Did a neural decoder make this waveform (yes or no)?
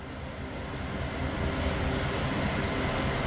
no